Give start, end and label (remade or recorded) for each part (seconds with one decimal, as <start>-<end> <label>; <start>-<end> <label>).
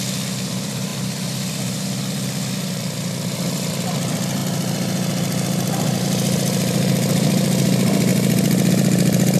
0.0-4.4 remade; 4.4-6.0 recorded; 6.0-9.4 remade